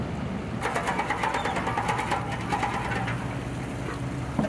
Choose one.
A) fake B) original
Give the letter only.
B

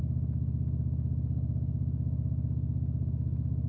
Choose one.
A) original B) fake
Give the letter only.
A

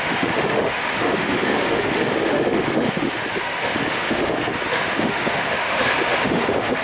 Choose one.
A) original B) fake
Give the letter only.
B